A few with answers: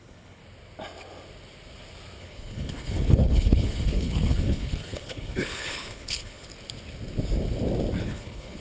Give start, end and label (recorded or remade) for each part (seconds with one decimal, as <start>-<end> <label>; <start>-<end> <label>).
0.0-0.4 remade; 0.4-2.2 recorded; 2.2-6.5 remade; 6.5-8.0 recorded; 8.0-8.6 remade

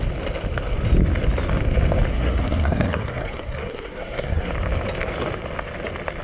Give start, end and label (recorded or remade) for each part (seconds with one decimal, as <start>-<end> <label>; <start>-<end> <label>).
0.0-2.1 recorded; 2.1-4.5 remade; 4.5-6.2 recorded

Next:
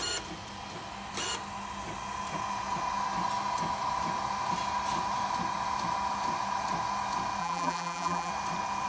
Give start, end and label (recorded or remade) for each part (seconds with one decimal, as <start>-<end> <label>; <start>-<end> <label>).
0.0-7.4 recorded; 7.4-8.3 remade; 8.3-8.9 recorded

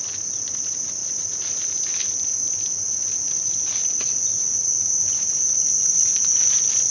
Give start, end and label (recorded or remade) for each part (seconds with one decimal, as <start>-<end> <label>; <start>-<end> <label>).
0.0-6.9 recorded

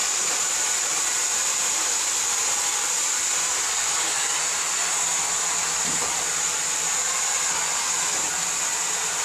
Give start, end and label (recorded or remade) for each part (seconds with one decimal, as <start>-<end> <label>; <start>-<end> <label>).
0.0-1.6 remade; 1.6-9.2 recorded

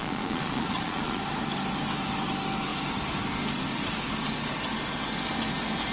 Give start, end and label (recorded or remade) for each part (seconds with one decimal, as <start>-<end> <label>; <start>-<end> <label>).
0.0-1.2 remade; 1.2-5.9 recorded

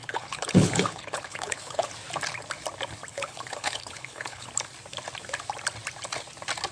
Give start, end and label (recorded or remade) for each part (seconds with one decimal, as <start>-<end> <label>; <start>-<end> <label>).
0.0-1.9 remade; 1.9-3.1 recorded; 3.1-4.5 remade; 4.5-6.7 recorded

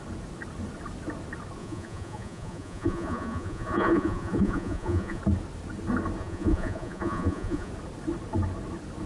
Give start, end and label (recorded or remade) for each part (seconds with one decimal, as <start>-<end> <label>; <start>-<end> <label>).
0.0-1.6 recorded; 1.6-5.2 remade; 5.2-6.2 recorded; 6.2-7.7 remade; 7.7-9.1 recorded